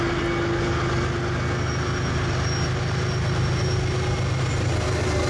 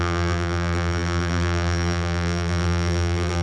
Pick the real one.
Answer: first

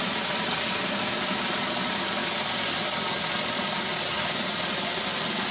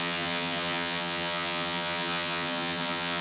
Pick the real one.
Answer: first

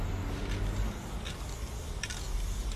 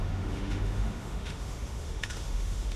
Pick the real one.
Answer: first